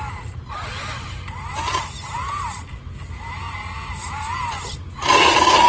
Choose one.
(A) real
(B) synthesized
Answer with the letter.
A